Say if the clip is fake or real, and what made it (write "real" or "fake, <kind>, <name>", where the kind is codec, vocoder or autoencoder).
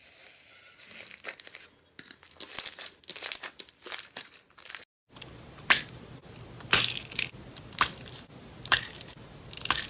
real